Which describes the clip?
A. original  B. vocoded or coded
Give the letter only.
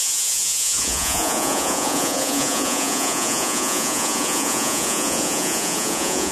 B